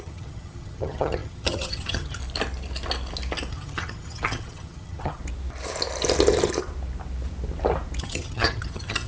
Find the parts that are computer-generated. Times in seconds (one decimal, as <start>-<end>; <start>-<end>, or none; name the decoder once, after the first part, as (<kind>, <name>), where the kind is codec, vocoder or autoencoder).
0.0-2.2 (vocoder, HiFi-GAN); 3.5-5.2; 8.0-9.1

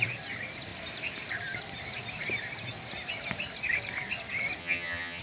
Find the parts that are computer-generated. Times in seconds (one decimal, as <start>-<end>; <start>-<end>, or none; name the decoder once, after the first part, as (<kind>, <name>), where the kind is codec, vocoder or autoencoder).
4.6-5.2 (vocoder, HiFi-GAN)

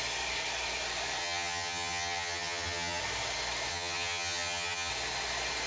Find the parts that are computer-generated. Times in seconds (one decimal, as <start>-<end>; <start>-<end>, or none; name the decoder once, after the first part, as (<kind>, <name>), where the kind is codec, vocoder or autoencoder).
1.2-3.0 (vocoder, HiFi-GAN); 3.7-4.9

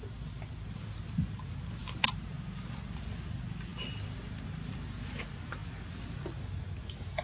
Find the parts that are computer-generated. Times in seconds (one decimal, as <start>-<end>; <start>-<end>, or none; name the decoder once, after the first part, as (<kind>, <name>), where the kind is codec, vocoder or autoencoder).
none

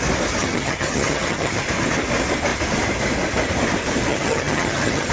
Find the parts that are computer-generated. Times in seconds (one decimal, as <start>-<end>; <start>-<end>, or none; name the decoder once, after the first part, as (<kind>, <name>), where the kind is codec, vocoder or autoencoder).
0.4-1.6 (vocoder, HiFi-GAN); 4.1-5.1

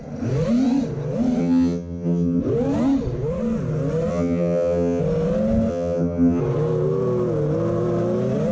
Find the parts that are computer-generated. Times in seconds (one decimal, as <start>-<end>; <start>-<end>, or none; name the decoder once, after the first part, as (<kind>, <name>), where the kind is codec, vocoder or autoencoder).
1.4-2.4 (vocoder, HiFi-GAN); 4.1-5.0; 5.7-6.4

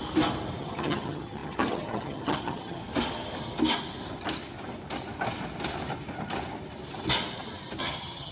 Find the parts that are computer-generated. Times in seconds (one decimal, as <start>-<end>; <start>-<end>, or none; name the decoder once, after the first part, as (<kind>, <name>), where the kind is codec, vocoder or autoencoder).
0.6-2.8 (vocoder, HiFi-GAN); 7.8-8.3